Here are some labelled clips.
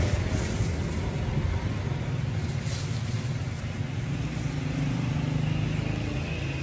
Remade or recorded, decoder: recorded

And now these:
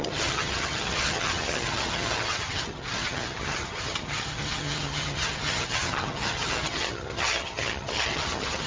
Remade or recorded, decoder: remade, vocoder, HiFi-GAN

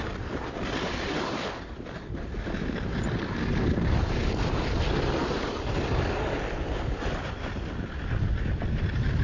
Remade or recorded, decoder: recorded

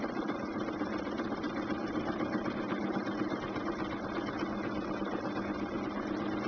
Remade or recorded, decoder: recorded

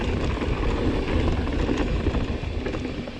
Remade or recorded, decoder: recorded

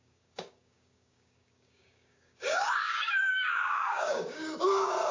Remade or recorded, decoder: remade, codec, DAC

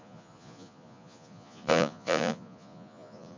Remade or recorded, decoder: remade, vocoder, Vocos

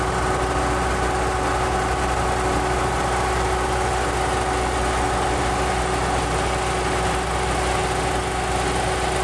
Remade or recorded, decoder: recorded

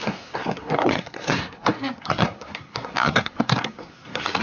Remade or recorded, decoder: remade, codec, SNAC